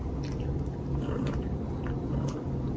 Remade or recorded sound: recorded